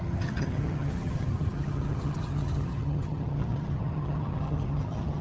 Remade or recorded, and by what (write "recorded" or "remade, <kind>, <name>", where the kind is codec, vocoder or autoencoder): remade, vocoder, HiFi-GAN